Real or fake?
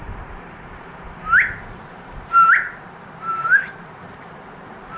fake